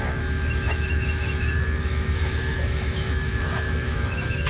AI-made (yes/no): yes